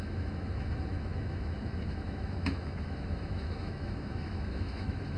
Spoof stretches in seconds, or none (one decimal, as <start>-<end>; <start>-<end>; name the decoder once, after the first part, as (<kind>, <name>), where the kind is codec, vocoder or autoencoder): 0.0-5.2 (autoencoder, DAC-VAE)